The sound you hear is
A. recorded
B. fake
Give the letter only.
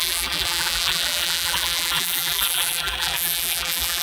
B